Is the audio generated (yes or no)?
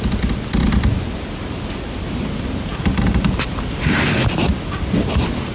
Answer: no